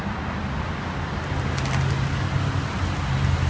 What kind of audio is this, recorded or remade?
recorded